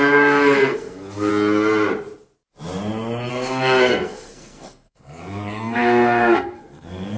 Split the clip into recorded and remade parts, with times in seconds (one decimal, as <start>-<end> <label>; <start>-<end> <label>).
0.0-1.3 remade; 1.3-3.3 recorded; 3.3-7.2 remade